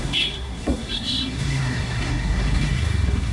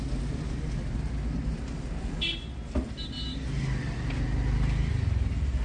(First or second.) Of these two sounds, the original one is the second